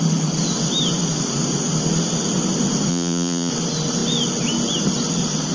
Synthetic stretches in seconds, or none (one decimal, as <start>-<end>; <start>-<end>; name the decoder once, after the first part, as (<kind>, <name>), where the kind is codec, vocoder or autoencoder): 2.9-3.5 (vocoder, Vocos)